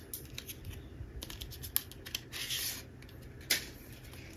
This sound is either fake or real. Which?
real